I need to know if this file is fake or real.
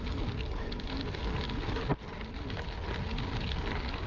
real